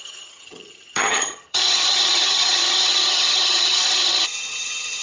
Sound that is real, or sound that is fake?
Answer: fake